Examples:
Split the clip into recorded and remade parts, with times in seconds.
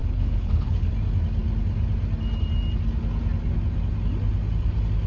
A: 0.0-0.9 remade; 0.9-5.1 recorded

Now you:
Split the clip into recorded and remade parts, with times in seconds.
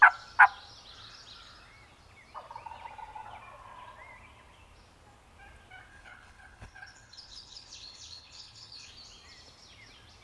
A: 0.0-5.9 recorded; 5.9-8.9 remade; 8.9-10.2 recorded